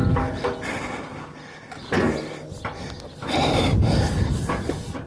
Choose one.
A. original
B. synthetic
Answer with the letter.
A